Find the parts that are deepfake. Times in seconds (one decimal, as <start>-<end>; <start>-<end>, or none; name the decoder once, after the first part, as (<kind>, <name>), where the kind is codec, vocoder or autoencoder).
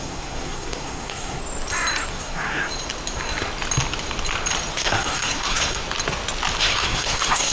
0.0-1.4 (codec, SNAC); 2.1-2.7; 4.7-5.8; 6.6-7.5